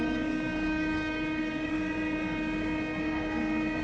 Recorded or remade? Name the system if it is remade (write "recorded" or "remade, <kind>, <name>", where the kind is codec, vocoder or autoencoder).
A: remade, codec, DAC